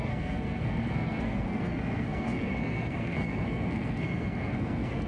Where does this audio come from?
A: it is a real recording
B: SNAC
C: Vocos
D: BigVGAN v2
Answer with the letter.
B